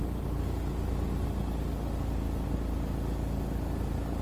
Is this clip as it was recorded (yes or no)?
yes